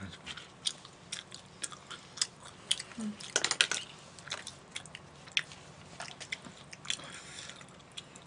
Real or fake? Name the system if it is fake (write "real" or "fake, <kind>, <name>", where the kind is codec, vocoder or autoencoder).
real